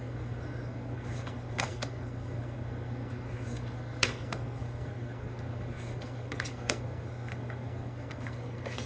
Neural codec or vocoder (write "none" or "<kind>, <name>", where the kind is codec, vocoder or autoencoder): codec, SNAC